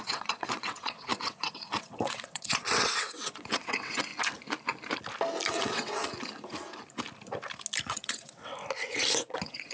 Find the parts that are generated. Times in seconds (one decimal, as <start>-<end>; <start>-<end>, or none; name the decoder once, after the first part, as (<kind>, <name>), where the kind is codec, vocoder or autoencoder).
0.0-4.1 (vocoder, WaveNeXt); 5.5-6.0; 7.9-8.5; 9.2-9.7